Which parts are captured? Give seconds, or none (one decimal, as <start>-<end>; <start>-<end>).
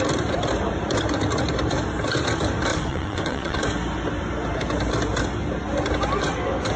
0.0-2.7; 3.6-6.8